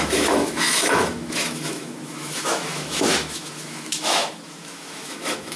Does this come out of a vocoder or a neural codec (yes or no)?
yes